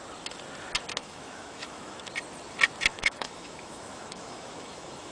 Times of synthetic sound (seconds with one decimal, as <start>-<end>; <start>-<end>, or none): 1.0-2.1; 2.9-5.1